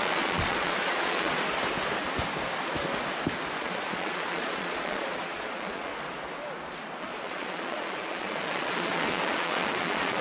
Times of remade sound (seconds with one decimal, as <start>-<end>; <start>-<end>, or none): 0.0-1.3; 3.6-5.9; 7.0-10.2